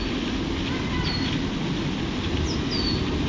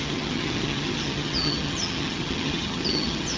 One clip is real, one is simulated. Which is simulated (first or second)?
second